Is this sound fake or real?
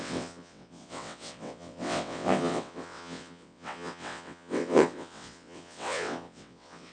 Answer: fake